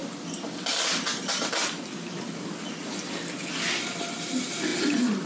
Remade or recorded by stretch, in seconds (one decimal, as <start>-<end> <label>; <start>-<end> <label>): 0.0-5.3 recorded